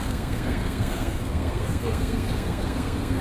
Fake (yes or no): yes